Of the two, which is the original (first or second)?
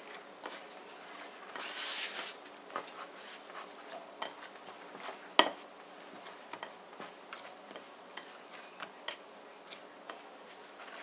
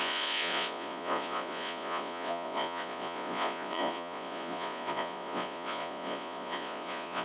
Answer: first